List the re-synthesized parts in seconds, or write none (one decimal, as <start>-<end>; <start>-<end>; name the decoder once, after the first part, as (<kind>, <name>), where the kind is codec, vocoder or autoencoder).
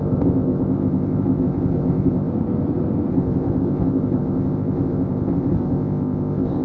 0.0-2.3 (codec, ZipCodec); 3.1-6.6